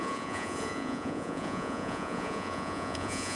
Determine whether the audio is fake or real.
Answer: fake